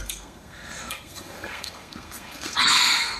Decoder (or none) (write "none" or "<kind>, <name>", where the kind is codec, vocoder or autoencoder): codec, SNAC